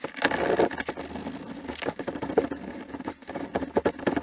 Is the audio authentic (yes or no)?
yes